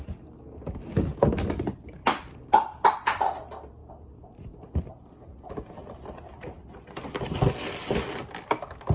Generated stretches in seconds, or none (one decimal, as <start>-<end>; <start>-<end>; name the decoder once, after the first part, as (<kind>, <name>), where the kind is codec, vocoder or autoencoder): 2.0-3.4 (vocoder, BigVGAN v2); 3.8-4.9